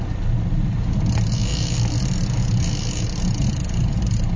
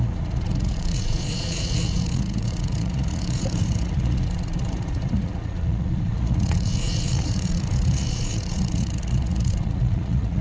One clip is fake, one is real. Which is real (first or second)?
first